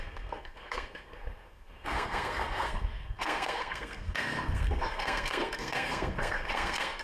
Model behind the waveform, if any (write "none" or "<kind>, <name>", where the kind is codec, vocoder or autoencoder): codec, SNAC